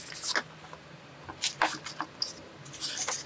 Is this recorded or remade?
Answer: recorded